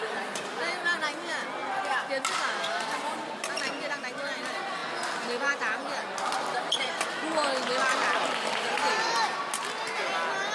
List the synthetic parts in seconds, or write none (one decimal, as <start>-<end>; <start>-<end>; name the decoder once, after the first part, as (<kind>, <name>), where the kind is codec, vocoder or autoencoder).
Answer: none